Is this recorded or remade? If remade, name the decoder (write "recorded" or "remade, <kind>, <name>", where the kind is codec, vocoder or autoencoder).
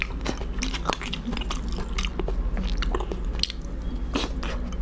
recorded